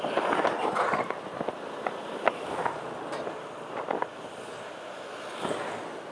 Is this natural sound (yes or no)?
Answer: yes